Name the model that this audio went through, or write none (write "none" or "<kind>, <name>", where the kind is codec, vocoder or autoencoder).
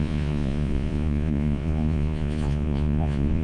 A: vocoder, Vocos